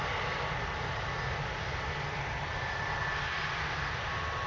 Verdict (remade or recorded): recorded